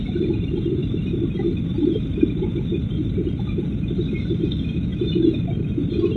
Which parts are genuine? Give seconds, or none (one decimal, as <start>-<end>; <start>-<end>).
0.0-6.2